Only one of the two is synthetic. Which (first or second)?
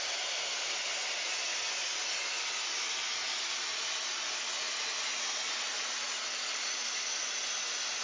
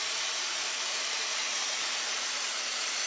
second